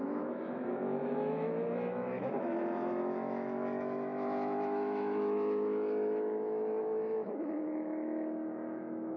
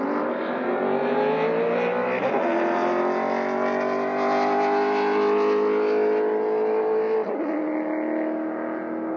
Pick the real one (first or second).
second